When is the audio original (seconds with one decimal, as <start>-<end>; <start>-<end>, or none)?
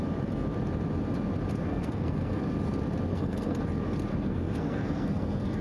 0.0-1.7; 2.4-3.1; 3.6-4.1